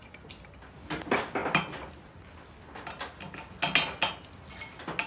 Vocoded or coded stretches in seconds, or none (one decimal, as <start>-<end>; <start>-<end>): none